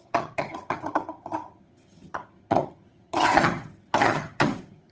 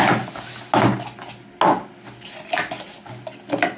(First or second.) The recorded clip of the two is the second